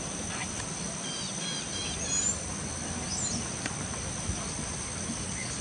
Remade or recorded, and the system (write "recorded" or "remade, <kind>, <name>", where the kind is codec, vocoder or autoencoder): recorded